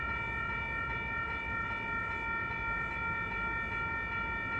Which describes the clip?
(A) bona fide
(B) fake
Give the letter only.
A